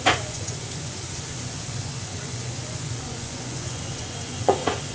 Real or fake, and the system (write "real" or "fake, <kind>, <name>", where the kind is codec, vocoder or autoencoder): fake, vocoder, Vocos